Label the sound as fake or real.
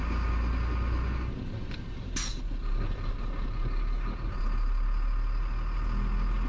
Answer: real